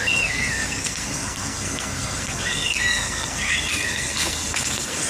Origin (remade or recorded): remade